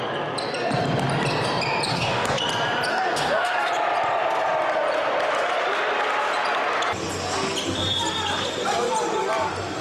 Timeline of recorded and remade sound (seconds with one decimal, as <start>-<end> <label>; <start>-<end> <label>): 0.0-1.9 recorded; 1.9-2.4 remade; 2.4-2.9 recorded; 2.9-3.7 remade; 3.7-9.8 recorded